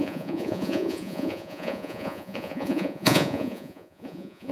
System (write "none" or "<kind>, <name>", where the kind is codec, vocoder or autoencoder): vocoder, Vocos